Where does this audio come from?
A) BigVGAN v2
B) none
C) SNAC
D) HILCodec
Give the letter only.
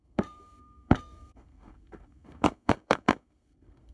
C